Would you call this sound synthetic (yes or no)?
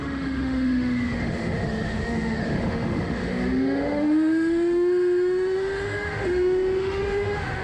yes